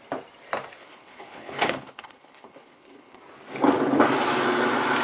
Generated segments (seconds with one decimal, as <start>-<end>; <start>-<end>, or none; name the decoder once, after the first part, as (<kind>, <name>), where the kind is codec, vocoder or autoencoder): 0.8-3.2 (codec, HILCodec)